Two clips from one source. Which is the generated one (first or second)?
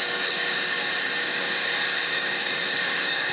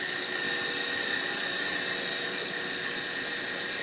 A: first